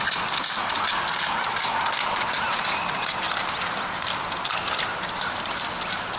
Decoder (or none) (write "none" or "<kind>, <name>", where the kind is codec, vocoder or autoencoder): none